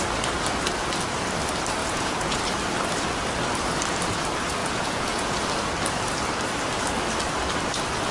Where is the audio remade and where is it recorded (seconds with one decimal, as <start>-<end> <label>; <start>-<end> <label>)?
0.0-1.8 recorded; 1.8-2.4 remade; 2.4-4.6 recorded; 4.6-5.4 remade; 5.4-8.1 recorded